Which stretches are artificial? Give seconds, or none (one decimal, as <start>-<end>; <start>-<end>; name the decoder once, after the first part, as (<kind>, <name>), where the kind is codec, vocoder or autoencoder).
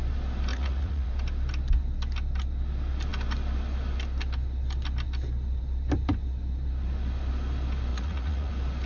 0.5-1.1 (vocoder, Vocos); 7.9-8.5